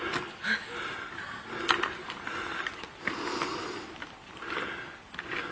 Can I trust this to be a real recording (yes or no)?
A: yes